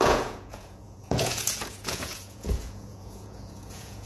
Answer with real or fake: fake